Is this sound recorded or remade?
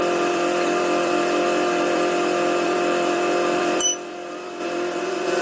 remade